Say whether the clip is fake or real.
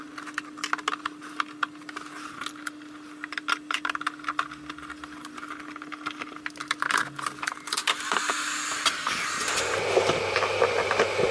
real